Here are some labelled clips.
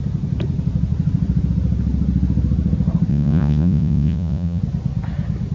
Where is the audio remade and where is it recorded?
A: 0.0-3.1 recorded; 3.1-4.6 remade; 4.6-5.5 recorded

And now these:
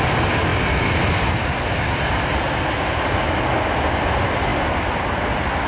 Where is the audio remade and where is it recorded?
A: 0.0-5.7 recorded